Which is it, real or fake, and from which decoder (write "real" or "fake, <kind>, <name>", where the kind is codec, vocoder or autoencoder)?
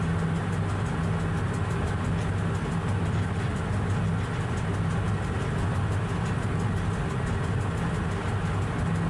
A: real